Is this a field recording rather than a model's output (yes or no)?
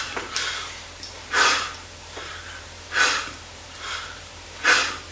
no